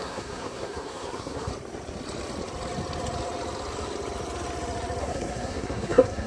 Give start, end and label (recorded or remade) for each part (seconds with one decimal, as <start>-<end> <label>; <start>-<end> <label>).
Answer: 0.0-1.5 remade; 1.5-5.0 recorded; 5.0-6.3 remade